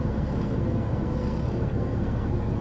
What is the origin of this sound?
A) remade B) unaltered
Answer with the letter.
A